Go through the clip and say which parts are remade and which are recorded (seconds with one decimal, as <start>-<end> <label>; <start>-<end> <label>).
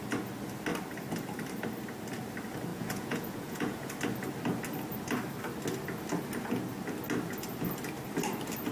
0.0-2.7 recorded; 2.7-3.9 remade; 3.9-8.7 recorded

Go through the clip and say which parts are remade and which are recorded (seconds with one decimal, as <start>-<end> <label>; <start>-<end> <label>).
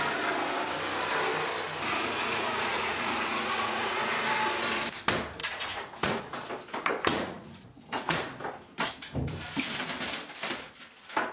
0.0-1.9 recorded; 1.9-4.1 remade; 4.1-5.4 recorded; 5.4-6.2 remade; 6.2-7.1 recorded; 7.1-8.3 remade; 8.3-11.3 recorded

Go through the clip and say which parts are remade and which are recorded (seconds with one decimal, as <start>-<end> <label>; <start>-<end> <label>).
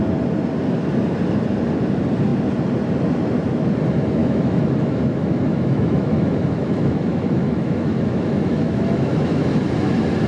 0.0-4.2 recorded; 4.2-9.4 remade; 9.4-10.3 recorded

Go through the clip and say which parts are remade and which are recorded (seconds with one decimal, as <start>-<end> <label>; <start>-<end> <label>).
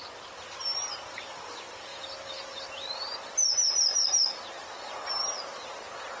0.0-6.2 recorded